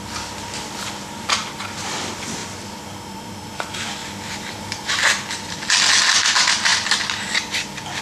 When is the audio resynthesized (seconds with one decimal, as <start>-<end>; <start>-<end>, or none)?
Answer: 2.4-3.4